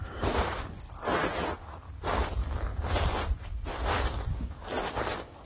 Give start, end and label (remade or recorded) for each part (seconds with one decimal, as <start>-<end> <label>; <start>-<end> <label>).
0.0-2.7 remade; 2.7-3.7 recorded; 3.7-5.5 remade